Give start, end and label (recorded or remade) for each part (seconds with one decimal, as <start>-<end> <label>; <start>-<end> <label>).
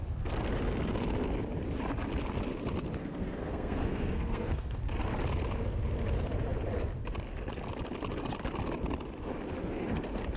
0.0-3.0 recorded; 3.0-4.8 remade; 4.8-10.4 recorded